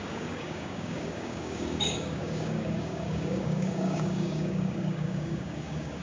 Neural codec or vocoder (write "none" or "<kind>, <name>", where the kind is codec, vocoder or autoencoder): codec, DAC